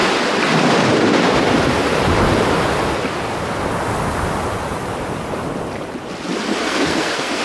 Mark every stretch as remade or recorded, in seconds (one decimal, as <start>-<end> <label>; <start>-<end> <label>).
0.0-6.5 recorded; 6.5-7.4 remade